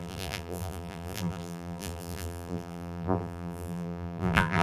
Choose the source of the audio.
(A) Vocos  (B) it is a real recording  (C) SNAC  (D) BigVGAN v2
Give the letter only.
D